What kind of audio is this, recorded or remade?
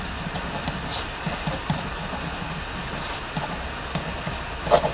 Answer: recorded